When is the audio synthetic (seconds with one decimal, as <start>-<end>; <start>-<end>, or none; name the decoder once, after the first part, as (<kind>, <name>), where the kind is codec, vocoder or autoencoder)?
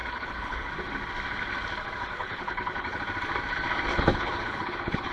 0.0-0.7 (codec, HILCodec); 2.1-3.0; 3.9-5.1